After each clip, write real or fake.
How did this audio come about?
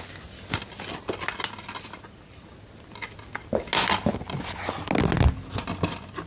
real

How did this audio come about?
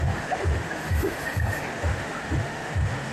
fake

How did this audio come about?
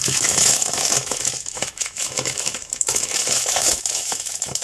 fake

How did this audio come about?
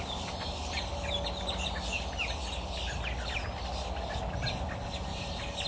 real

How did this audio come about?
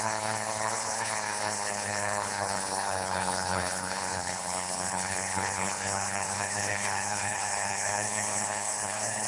fake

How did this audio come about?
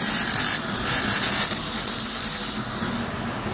real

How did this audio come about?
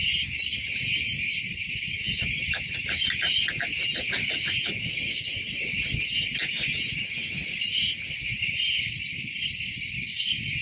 real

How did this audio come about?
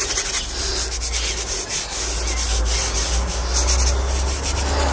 real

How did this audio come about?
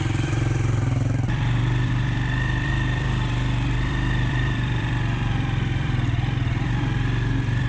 fake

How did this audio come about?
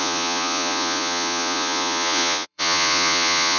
fake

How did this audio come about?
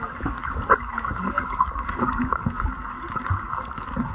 fake